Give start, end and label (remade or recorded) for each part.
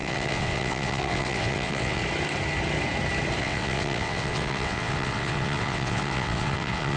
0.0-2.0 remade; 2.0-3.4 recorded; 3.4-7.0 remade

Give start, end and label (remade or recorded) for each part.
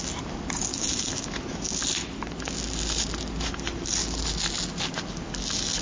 0.0-0.7 recorded; 0.7-1.3 remade; 1.3-5.8 recorded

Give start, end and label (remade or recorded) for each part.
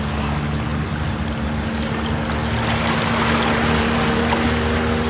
0.0-5.1 recorded